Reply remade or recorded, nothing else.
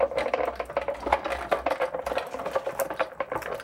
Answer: recorded